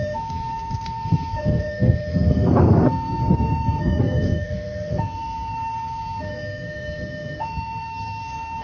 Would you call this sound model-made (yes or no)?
yes